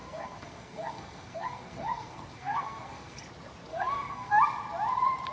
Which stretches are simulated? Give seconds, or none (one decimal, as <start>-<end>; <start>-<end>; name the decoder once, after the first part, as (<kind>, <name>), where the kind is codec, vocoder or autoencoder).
0.0-3.2 (codec, SNAC); 3.7-4.4